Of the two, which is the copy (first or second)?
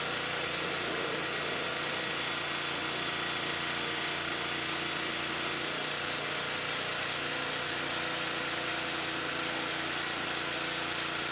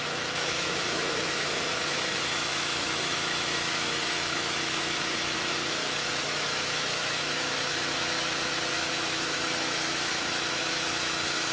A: second